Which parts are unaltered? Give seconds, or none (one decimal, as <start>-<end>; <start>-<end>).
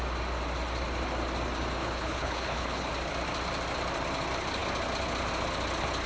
0.0-1.8; 2.9-6.1